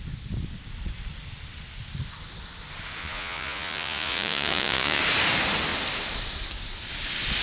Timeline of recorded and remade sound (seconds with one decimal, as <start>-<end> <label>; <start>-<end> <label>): 0.0-3.0 recorded; 3.0-5.0 remade; 5.0-7.4 recorded